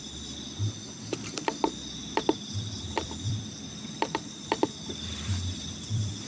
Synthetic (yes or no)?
yes